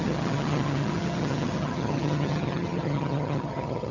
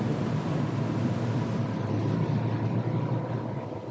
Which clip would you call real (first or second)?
second